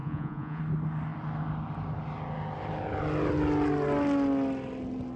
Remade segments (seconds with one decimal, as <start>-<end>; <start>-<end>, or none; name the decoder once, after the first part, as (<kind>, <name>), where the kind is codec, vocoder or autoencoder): 0.0-0.6 (vocoder, Vocos)